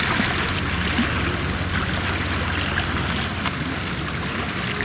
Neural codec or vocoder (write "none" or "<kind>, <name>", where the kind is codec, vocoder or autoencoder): none